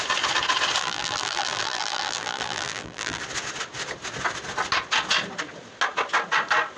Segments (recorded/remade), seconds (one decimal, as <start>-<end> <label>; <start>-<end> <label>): 0.0-0.8 recorded; 0.8-3.2 remade; 3.2-6.8 recorded